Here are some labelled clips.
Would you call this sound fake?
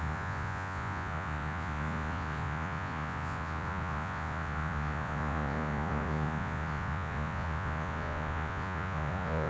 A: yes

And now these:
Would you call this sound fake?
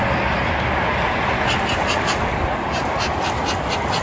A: no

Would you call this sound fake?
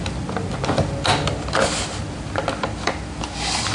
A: no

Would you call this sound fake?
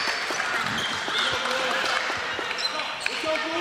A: no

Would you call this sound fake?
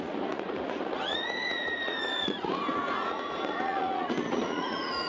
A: yes